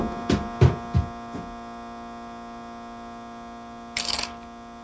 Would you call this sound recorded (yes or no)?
yes